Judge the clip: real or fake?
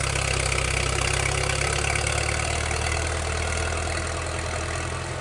real